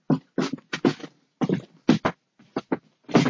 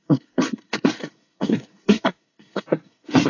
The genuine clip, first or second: first